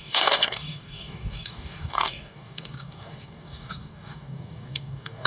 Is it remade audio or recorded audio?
remade